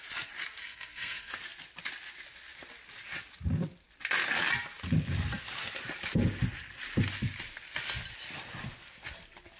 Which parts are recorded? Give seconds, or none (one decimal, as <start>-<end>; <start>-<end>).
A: 0.0-0.6; 1.3-9.6